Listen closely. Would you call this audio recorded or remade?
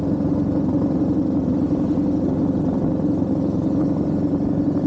recorded